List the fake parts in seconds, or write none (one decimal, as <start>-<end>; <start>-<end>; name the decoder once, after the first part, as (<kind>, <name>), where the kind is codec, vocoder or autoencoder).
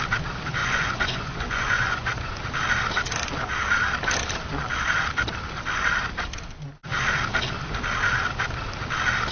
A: 0.6-2.3 (vocoder, Vocos)